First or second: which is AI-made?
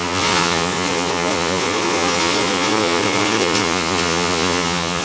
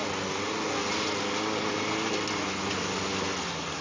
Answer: first